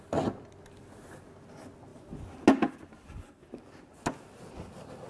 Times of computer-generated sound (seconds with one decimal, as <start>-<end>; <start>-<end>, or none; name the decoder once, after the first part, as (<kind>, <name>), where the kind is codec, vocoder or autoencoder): none